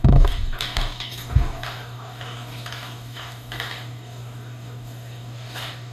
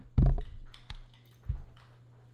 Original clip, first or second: second